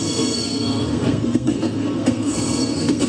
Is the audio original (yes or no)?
no